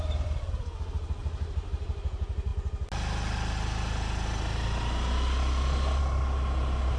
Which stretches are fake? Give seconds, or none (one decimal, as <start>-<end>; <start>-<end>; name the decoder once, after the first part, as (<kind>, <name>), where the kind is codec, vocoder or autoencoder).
none